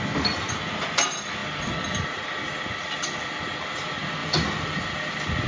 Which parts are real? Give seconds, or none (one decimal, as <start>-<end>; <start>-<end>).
0.0-5.5